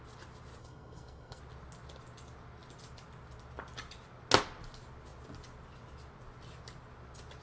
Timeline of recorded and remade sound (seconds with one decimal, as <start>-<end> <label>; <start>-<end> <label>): 0.0-0.6 recorded; 0.6-1.4 remade; 1.4-7.4 recorded